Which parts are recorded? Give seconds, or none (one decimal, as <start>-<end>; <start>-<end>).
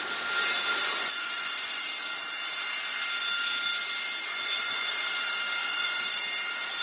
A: 0.0-0.8; 1.8-4.3; 4.9-5.6; 6.2-6.8